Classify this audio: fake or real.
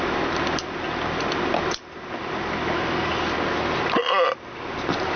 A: real